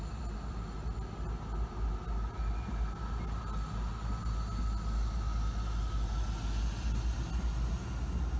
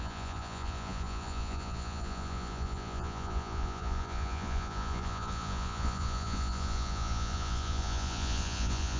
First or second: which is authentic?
first